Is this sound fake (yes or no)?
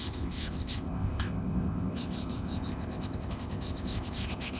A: yes